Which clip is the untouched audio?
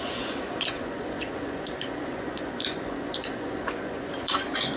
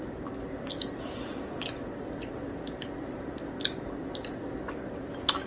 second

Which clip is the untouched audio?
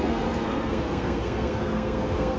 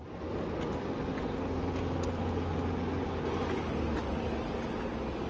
second